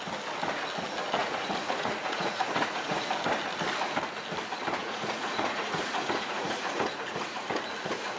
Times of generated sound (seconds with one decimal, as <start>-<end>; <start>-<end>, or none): 1.2-3.1; 4.8-7.5